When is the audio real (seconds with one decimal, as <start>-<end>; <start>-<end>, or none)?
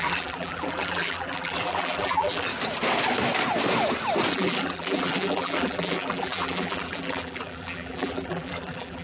2.5-4.3